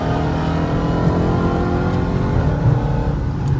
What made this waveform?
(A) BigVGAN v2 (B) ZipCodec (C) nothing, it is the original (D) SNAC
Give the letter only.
C